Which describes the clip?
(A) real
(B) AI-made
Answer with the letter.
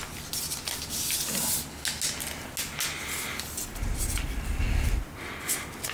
A